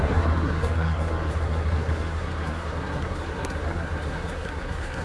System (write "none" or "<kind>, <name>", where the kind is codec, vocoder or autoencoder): codec, SNAC